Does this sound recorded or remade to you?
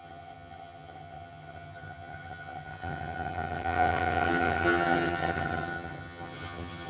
remade